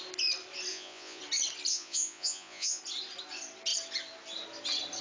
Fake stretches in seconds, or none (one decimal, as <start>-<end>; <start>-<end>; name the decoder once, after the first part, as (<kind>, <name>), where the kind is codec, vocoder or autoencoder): 0.7-1.2 (vocoder, Vocos); 1.7-2.8